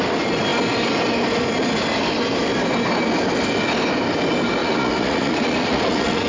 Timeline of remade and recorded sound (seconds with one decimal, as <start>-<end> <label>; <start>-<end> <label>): 0.0-4.6 recorded; 4.6-6.3 remade